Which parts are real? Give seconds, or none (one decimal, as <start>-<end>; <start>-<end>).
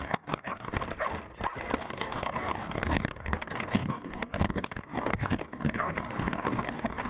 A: 0.7-1.8